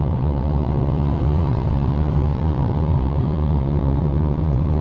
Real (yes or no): no